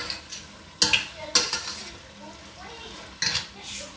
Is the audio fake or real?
real